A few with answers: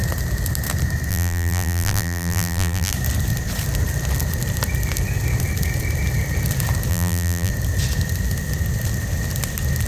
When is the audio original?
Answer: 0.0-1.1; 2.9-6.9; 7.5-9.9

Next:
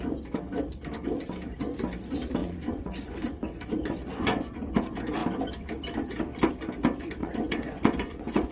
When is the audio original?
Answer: 0.0-2.4; 4.7-7.2

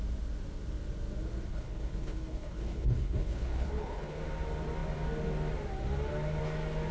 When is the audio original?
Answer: 0.0-1.5; 4.2-6.9

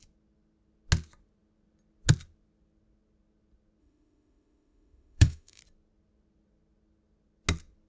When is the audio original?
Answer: 0.0-3.8; 5.6-7.9

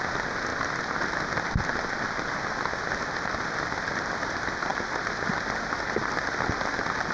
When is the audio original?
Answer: 0.0-7.1

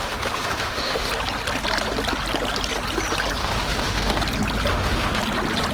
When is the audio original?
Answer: 1.1-3.4; 4.2-4.7; 5.2-5.7